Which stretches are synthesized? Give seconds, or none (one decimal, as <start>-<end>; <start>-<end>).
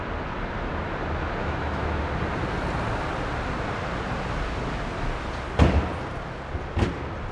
1.4-2.0